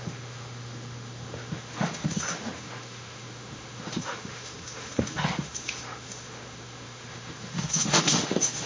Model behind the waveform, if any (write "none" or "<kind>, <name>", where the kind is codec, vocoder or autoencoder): autoencoder, DAC-VAE